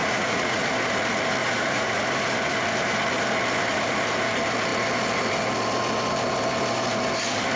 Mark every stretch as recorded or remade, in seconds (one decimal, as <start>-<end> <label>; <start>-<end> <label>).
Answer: 0.0-0.7 remade; 0.7-1.4 recorded; 1.4-2.0 remade; 2.0-7.6 recorded